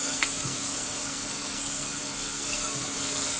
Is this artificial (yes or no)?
yes